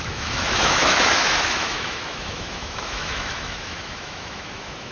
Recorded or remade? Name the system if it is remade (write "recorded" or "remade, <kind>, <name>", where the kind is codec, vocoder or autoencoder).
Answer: remade, autoencoder, DAC-VAE